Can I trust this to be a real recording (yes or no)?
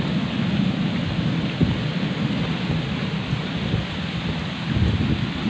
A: yes